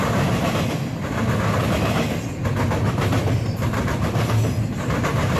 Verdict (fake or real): real